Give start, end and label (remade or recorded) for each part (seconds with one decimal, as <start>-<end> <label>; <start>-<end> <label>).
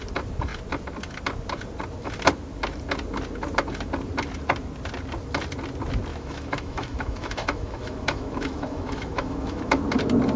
0.0-6.1 recorded; 6.1-9.8 remade; 9.8-10.4 recorded